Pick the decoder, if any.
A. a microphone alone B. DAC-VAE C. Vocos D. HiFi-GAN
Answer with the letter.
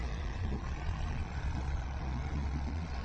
C